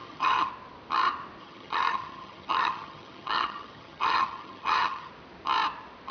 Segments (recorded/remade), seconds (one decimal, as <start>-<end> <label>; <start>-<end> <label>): 0.0-0.5 remade; 0.5-1.4 recorded; 1.4-5.1 remade; 5.1-6.1 recorded